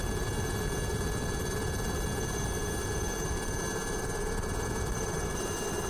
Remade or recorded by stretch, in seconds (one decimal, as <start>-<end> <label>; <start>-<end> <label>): 0.0-5.9 recorded